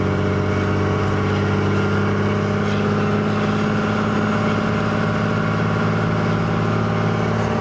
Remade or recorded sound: recorded